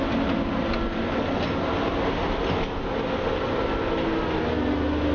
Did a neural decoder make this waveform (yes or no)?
no